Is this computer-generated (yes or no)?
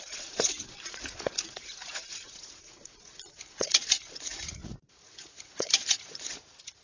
yes